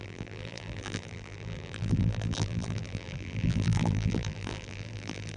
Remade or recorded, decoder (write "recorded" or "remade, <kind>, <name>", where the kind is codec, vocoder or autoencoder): remade, vocoder, BigVGAN v2